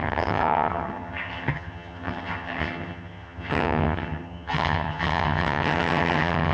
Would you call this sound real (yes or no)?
no